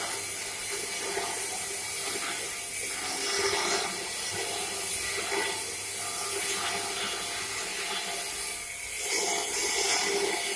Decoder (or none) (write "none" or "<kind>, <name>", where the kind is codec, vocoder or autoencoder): none